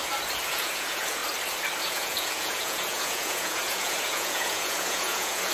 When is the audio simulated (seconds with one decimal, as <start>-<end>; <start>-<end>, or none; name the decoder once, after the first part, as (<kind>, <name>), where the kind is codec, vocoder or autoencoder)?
0.5-1.2 (vocoder, Vocos); 1.8-5.5